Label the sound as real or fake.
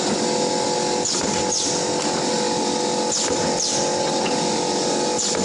real